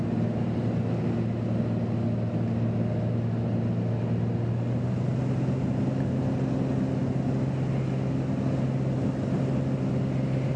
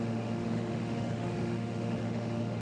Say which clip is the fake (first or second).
second